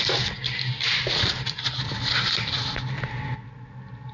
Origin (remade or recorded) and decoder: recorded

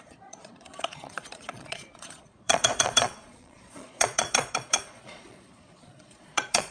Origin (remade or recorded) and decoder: remade, vocoder, Vocos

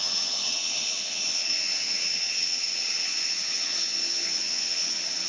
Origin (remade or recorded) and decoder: remade, vocoder, HiFi-GAN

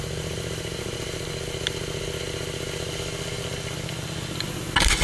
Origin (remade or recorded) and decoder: recorded